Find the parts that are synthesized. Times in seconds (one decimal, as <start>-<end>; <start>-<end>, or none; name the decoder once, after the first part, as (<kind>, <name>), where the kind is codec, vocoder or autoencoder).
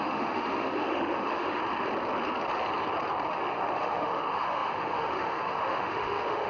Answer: 0.0-1.6 (autoencoder, DAC-VAE); 3.3-6.5